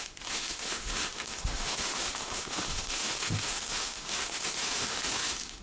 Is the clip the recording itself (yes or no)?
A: no